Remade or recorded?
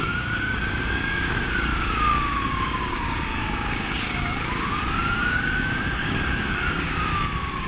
remade